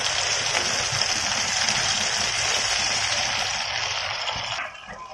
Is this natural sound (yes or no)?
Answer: no